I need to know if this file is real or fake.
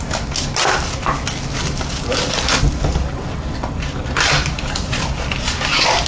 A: real